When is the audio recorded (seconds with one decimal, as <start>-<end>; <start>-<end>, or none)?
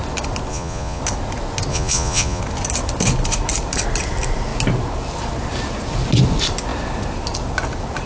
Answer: 0.0-0.5; 1.0-1.7; 2.4-8.1